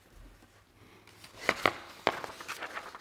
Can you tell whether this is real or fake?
real